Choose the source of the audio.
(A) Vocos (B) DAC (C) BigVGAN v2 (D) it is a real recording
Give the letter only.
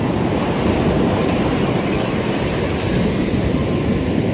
D